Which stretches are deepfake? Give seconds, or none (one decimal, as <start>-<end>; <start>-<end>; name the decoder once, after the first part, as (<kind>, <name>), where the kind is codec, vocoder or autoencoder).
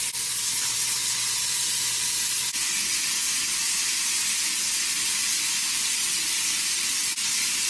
5.2-5.8 (vocoder, BigVGAN v2)